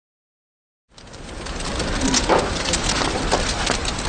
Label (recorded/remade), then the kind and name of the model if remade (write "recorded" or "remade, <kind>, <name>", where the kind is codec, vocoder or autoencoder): recorded